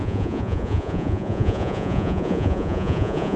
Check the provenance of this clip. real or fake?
fake